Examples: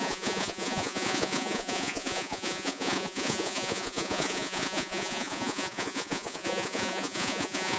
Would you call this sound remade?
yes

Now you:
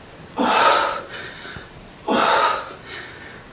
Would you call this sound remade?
no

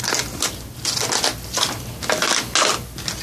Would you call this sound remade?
no